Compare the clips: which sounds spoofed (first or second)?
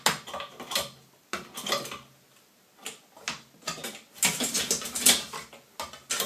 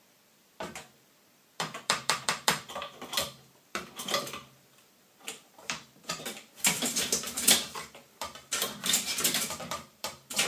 second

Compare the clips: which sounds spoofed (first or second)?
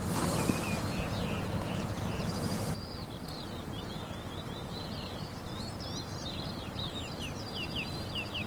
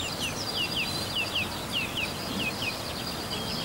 second